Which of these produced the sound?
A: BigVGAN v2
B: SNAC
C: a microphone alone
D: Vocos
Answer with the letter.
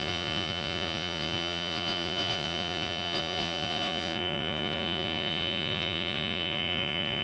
D